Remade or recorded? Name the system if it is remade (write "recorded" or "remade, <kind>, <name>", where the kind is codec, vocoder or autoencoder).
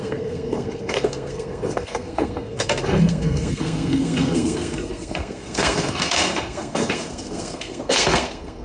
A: remade, codec, SNAC